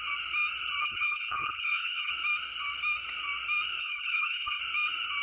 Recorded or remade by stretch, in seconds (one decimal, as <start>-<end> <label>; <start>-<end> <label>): 0.0-0.8 recorded; 0.8-2.1 remade; 2.1-3.8 recorded; 3.8-4.6 remade; 4.6-5.2 recorded